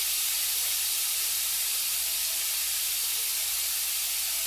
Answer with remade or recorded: recorded